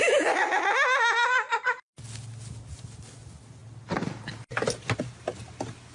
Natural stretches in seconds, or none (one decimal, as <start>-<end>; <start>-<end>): 0.0-5.9